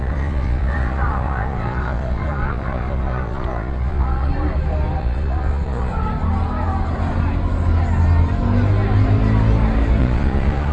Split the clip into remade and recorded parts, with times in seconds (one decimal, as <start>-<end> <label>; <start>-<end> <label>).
0.0-4.3 remade; 4.3-5.0 recorded; 5.0-5.9 remade; 5.9-10.0 recorded; 10.0-10.7 remade